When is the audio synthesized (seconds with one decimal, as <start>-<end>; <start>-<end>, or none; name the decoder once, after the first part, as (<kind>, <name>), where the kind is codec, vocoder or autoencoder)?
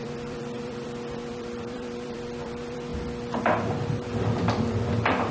0.0-2.9 (vocoder, BigVGAN v2); 3.4-5.3